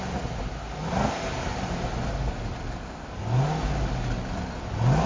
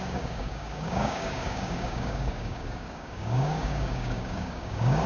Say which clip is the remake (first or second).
second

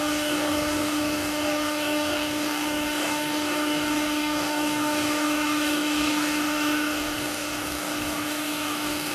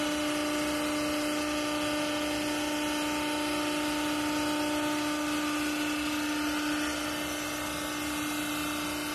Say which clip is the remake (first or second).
first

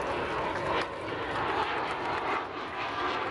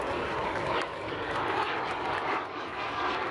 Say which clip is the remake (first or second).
second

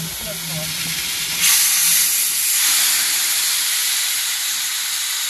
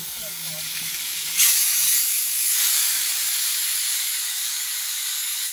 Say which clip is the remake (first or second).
second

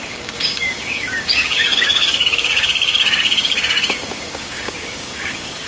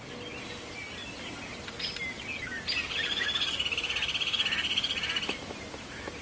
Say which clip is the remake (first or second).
first